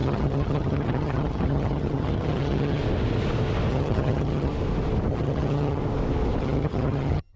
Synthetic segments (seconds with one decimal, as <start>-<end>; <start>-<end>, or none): 0.0-2.8; 3.7-4.5; 5.1-5.8; 6.4-7.4